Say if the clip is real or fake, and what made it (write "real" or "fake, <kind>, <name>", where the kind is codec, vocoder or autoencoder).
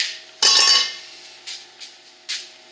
real